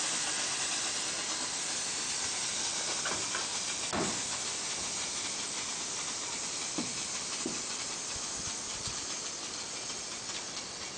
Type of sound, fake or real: real